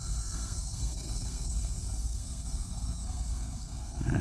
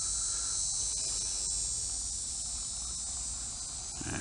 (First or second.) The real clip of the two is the second